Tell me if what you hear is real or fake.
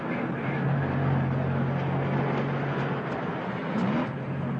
real